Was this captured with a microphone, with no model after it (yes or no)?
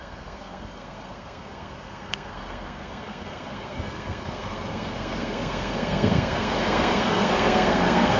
no